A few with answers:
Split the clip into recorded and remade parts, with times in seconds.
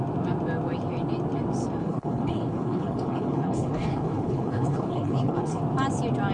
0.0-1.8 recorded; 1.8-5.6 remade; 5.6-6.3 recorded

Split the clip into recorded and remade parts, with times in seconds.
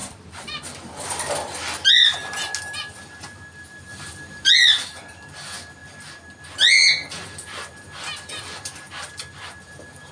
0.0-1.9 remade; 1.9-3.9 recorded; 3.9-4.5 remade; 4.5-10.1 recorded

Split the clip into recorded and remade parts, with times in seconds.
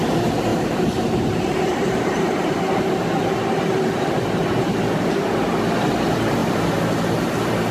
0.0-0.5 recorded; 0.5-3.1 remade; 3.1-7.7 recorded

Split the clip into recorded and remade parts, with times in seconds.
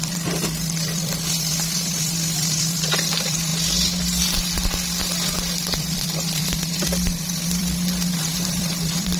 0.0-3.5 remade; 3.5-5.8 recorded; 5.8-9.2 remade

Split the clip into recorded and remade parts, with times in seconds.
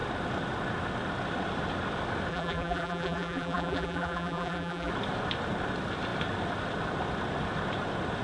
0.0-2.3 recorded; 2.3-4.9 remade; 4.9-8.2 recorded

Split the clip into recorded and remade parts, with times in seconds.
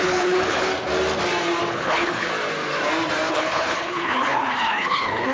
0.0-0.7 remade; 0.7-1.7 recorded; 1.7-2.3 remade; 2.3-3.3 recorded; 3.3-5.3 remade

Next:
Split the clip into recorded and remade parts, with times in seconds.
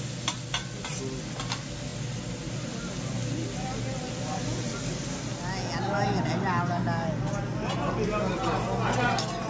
0.0-9.5 recorded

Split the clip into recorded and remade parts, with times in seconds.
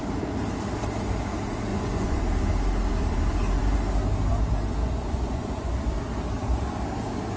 0.0-1.7 recorded; 1.7-2.2 remade; 2.2-4.8 recorded; 4.8-5.7 remade; 5.7-7.4 recorded